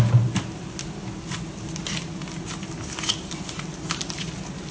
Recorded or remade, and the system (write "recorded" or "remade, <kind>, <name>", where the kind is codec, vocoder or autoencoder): recorded